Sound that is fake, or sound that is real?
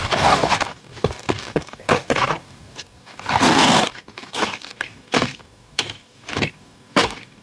fake